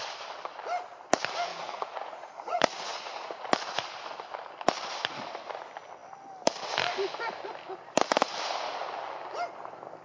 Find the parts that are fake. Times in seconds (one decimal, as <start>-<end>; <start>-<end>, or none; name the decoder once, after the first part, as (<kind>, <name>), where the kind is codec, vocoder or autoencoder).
1.5-3.5 (vocoder, Vocos)